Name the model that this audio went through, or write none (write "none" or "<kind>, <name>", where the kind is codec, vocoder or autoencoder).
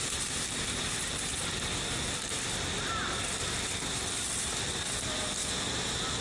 none